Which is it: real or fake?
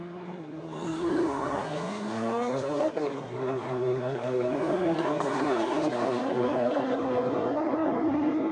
fake